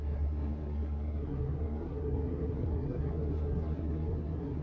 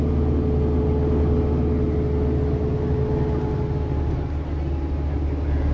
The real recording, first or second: second